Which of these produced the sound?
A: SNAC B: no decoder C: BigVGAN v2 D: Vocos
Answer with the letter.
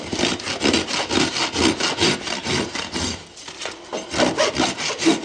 B